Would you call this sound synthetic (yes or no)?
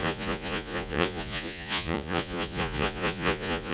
yes